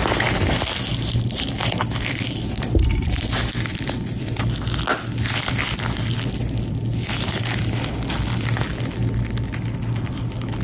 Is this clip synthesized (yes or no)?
no